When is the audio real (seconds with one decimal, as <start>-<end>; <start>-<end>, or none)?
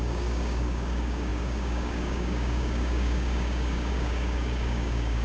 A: none